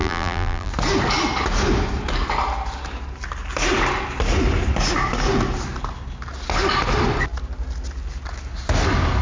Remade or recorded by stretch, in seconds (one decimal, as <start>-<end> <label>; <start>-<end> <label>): 0.0-0.7 remade; 0.7-9.2 recorded